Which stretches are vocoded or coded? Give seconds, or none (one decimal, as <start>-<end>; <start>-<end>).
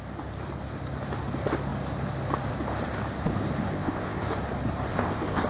3.7-4.2; 4.9-5.5